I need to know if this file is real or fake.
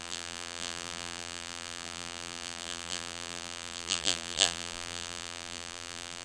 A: fake